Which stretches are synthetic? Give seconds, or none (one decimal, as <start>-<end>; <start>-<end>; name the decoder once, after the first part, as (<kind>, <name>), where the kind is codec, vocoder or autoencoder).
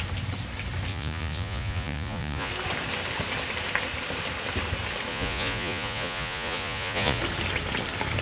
0.9-2.5 (vocoder, Vocos); 5.1-7.2